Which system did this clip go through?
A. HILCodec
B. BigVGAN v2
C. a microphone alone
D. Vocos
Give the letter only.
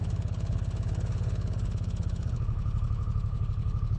A